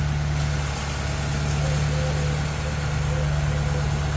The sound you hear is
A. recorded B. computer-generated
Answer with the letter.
A